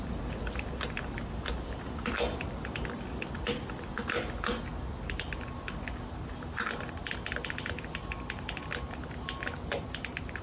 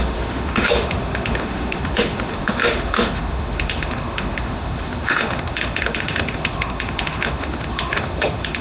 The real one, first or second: first